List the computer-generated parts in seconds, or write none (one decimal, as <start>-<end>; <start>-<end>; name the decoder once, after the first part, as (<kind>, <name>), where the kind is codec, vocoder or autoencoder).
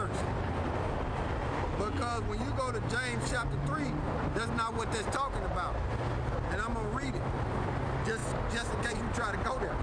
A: none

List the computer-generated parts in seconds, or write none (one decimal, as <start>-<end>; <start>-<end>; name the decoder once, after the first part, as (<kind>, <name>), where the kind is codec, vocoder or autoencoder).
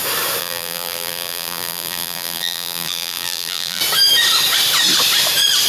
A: 0.4-3.8 (vocoder, BigVGAN v2)